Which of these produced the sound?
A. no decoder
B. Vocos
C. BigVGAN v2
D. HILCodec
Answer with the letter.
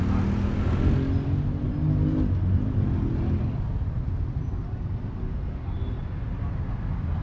A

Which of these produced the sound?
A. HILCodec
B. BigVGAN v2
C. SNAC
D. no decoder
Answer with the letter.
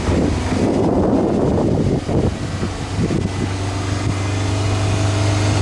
D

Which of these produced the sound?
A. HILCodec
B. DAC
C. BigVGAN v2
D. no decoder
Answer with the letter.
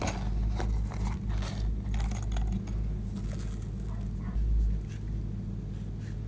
D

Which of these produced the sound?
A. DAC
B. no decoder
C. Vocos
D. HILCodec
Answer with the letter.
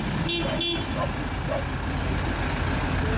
B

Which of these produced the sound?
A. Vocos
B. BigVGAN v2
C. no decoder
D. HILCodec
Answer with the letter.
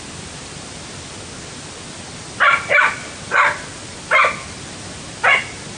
C